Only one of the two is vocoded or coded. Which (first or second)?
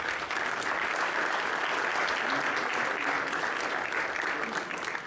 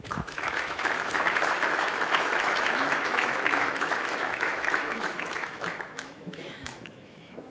second